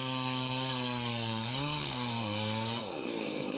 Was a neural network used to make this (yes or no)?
yes